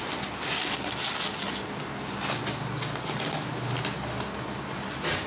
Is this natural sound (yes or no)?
yes